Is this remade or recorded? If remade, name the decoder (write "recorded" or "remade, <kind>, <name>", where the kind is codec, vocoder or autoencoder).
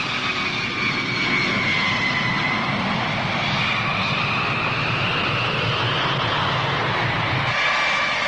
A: recorded